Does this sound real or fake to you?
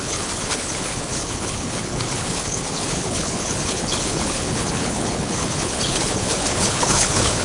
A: fake